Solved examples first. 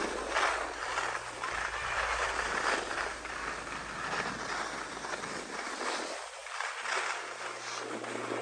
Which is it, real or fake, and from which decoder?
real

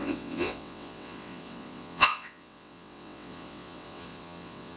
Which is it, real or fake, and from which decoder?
fake, vocoder, WaveNeXt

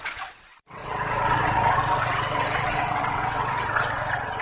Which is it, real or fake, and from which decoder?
fake, vocoder, WaveNeXt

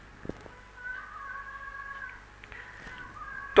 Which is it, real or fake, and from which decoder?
real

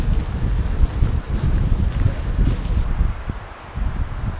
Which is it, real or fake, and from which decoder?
real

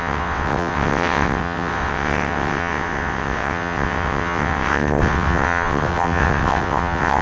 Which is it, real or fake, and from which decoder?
fake, vocoder, WaveNeXt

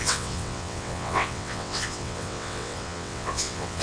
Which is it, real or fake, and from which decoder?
fake, vocoder, WaveNeXt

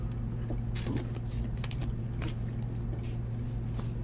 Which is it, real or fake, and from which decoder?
real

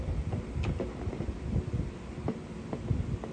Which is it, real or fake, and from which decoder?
real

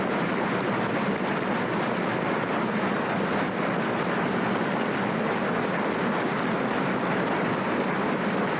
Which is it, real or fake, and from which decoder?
real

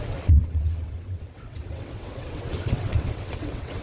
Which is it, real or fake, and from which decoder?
fake, vocoder, WaveNeXt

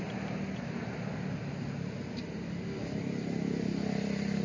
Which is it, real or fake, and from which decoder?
real